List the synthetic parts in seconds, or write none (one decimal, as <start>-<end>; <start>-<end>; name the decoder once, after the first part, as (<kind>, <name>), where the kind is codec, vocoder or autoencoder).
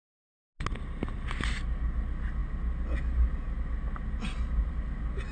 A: none